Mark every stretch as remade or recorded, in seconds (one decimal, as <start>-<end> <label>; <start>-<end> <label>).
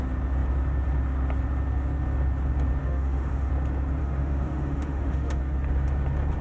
0.0-2.8 recorded; 2.8-3.5 remade; 3.5-4.0 recorded; 4.0-5.4 remade; 5.4-6.4 recorded